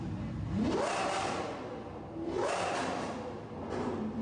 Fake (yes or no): no